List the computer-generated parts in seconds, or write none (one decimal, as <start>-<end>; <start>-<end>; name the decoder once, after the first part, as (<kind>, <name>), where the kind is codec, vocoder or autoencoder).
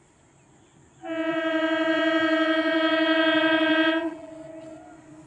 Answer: 1.3-4.3 (vocoder, BigVGAN v2)